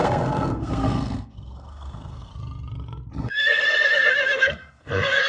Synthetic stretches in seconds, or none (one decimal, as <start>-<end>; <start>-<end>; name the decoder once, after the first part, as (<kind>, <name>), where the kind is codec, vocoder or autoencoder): 0.0-2.3 (codec, SNAC); 3.2-5.3